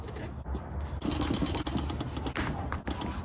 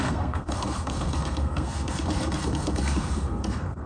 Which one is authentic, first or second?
first